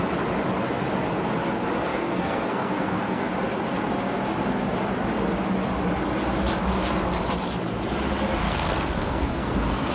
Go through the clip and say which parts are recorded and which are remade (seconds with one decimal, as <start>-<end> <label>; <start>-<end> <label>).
0.0-1.9 recorded; 1.9-3.3 remade; 3.3-8.4 recorded; 8.4-9.9 remade